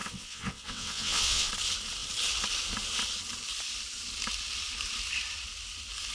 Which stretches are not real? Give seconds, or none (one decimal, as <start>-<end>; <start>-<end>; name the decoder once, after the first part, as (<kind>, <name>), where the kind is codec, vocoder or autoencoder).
0.0-1.5 (vocoder, WaveNeXt)